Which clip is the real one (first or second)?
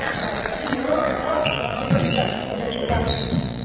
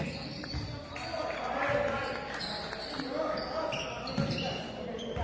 second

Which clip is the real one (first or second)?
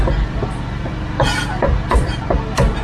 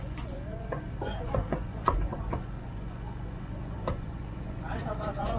first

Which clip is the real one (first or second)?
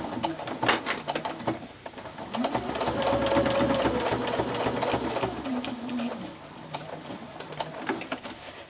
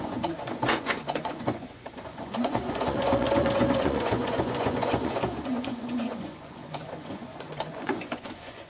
first